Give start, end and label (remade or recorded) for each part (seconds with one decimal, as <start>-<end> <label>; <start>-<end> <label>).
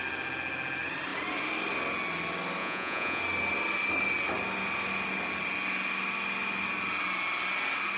0.0-2.6 recorded; 2.6-3.2 remade; 3.2-8.0 recorded